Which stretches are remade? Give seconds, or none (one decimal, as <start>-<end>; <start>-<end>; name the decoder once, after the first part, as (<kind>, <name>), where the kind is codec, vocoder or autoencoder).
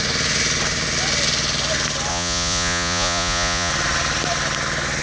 2.1-3.7 (vocoder, Vocos)